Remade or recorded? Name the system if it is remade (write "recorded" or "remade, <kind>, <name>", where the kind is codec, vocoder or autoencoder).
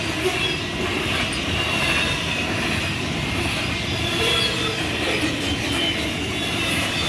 recorded